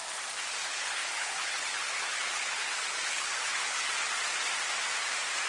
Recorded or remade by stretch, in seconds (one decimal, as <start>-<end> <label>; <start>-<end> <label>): 0.0-0.6 recorded; 0.6-3.9 remade; 3.9-5.5 recorded